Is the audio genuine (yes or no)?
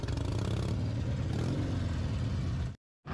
yes